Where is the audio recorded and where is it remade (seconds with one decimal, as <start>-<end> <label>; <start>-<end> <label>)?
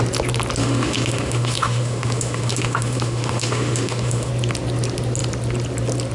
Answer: 0.0-0.6 recorded; 0.6-4.3 remade; 4.3-6.1 recorded